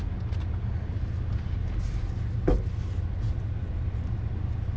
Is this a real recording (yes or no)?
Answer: yes